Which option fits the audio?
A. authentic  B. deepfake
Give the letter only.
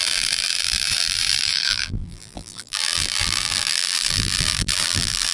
B